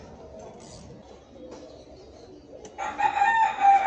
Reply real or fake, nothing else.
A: real